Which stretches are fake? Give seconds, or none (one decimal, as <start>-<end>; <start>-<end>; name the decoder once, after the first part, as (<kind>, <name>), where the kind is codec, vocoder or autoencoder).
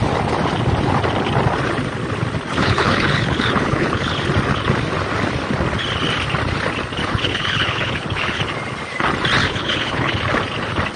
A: 2.6-4.2 (codec, HILCodec); 7.0-8.4; 9.4-10.2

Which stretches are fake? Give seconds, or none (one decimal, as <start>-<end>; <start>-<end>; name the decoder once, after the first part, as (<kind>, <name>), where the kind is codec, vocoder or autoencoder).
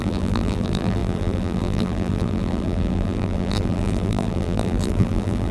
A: 0.0-5.5 (vocoder, BigVGAN v2)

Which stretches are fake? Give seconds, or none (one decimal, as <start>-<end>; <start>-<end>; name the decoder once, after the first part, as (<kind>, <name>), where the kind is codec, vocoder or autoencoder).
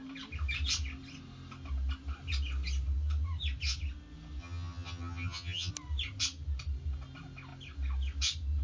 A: 4.4-5.7 (vocoder, HiFi-GAN)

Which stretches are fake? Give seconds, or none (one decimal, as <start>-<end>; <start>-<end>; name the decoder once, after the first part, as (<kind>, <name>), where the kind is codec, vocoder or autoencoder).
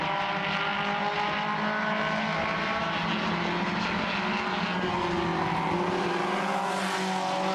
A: none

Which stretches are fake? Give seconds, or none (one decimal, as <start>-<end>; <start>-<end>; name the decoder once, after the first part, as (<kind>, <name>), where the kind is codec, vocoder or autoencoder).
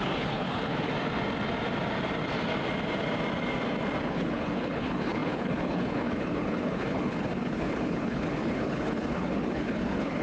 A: 0.0-0.9 (codec, HILCodec); 4.0-10.2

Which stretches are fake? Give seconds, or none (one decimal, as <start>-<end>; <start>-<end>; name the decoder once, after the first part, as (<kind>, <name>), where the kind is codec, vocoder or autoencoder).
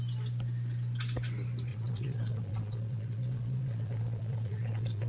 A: 1.7-5.1 (vocoder, Vocos)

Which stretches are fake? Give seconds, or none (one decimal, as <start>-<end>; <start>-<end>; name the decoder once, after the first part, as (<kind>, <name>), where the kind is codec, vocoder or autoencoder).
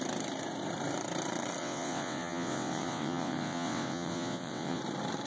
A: 1.6-4.8 (vocoder, WaveNeXt)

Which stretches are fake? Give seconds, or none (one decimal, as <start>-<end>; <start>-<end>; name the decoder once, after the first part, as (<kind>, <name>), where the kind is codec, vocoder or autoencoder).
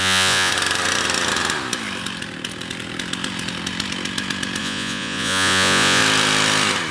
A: 0.0-0.5 (vocoder, Vocos); 4.6-6.0